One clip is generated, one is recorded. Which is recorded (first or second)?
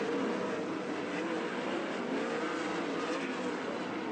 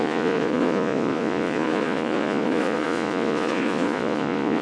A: first